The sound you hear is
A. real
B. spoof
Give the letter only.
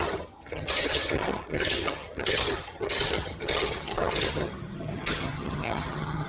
B